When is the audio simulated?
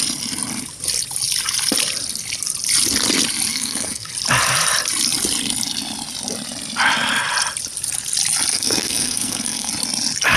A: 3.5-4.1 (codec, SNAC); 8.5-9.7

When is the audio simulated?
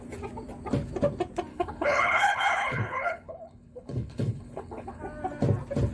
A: 1.5-5.0 (codec, HILCodec)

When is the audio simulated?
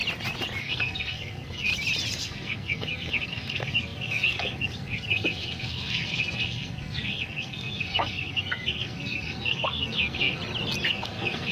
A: 0.6-1.7 (codec, SNAC); 2.2-10.4; 10.9-11.5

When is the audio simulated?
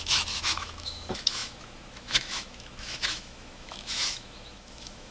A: 0.0-5.1 (autoencoder, DAC-VAE)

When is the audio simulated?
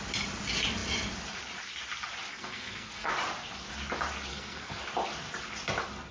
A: 2.3-3.1 (codec, SNAC); 4.3-4.8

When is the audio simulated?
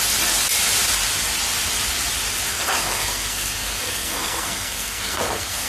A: 2.5-5.7 (codec, SNAC)